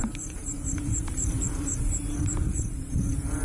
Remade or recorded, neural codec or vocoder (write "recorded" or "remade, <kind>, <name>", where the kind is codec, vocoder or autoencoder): remade, vocoder, BigVGAN v2